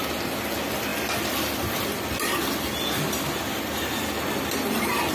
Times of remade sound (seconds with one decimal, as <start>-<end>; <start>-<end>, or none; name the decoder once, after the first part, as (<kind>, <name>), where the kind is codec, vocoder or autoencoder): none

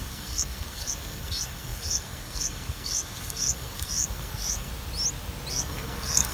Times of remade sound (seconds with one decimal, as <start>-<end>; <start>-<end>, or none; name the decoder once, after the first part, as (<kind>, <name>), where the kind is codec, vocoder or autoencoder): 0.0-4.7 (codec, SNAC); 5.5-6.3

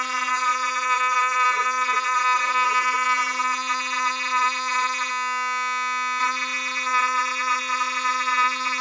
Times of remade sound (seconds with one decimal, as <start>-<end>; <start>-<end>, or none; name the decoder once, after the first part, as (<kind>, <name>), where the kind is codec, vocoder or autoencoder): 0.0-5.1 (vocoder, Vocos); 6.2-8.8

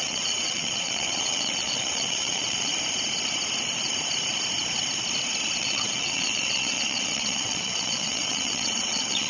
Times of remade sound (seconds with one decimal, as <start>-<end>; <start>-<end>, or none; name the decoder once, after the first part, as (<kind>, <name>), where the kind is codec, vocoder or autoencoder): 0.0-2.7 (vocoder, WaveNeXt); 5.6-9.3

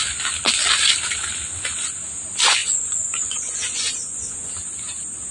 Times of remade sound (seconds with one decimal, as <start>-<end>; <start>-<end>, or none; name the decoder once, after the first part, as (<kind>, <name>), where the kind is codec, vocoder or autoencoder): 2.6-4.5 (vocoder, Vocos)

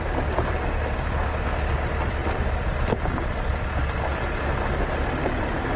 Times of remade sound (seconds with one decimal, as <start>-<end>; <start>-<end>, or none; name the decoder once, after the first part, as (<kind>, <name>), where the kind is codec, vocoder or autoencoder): none